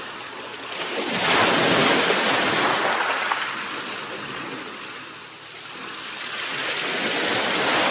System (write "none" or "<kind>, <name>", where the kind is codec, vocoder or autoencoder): none